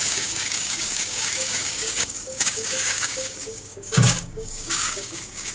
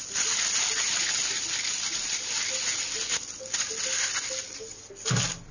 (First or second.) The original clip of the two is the second